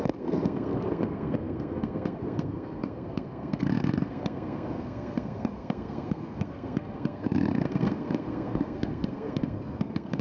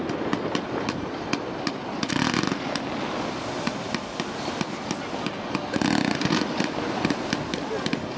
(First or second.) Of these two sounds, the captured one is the second